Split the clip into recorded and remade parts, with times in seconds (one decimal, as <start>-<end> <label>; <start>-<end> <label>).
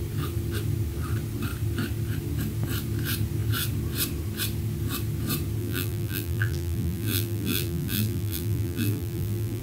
0.0-5.6 recorded; 5.6-9.6 remade